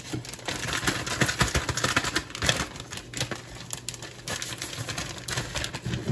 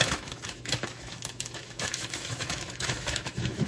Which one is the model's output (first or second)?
second